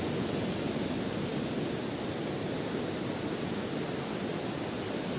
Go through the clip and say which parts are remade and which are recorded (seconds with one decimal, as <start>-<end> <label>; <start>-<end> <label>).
0.0-5.2 recorded